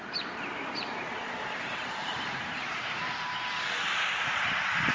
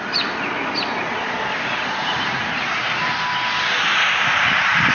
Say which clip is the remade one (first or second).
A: first